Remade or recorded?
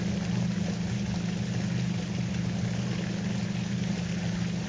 recorded